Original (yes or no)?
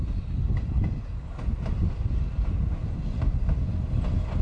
yes